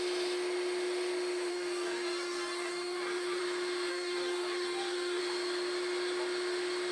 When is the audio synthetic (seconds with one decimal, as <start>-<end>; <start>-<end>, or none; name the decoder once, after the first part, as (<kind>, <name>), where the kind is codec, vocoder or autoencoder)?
1.5-3.4 (codec, DAC); 3.9-5.2